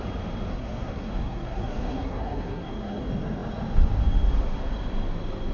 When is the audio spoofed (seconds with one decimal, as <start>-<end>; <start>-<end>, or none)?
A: 0.5-3.0